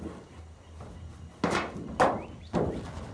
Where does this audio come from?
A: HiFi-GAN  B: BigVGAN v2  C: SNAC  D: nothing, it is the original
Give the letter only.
D